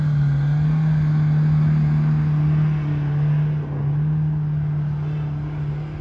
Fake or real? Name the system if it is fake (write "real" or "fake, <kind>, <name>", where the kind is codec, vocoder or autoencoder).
real